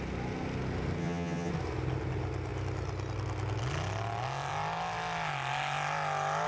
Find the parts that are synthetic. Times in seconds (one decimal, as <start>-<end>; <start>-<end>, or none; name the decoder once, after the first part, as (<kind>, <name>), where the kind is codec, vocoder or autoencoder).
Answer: 1.0-1.5 (vocoder, HiFi-GAN)